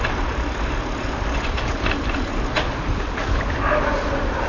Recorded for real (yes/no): yes